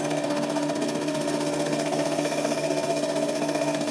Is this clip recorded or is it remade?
remade